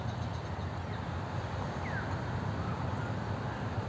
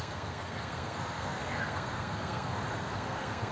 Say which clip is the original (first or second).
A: first